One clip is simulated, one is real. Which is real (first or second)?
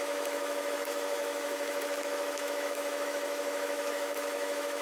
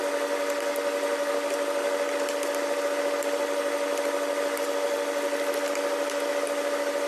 second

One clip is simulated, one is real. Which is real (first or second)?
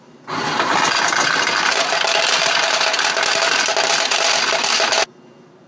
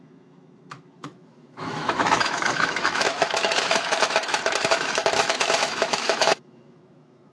first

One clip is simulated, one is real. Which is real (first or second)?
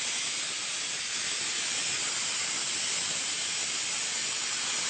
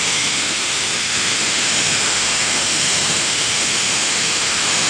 first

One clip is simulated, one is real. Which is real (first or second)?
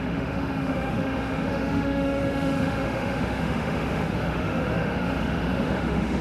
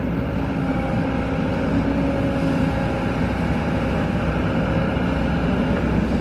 second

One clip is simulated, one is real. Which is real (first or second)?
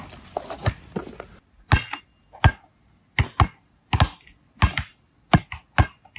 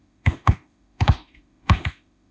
first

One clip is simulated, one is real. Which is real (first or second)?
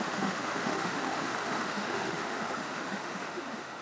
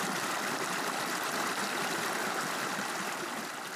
second